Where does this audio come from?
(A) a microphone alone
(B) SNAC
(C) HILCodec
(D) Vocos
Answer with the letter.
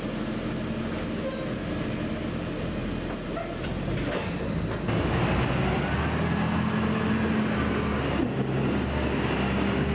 A